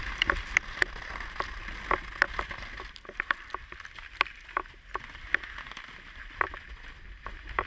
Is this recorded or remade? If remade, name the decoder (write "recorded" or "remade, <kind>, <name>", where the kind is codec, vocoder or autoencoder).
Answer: recorded